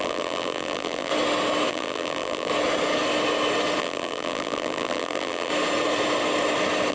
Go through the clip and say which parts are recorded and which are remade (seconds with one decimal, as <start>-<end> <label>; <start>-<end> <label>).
0.0-1.1 remade; 1.1-1.7 recorded; 1.7-2.5 remade; 2.5-3.8 recorded; 3.8-5.5 remade; 5.5-6.9 recorded

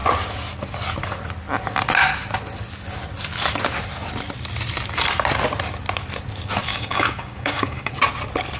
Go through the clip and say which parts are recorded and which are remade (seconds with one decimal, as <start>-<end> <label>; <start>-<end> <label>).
0.0-6.7 recorded; 6.7-7.9 remade; 7.9-8.6 recorded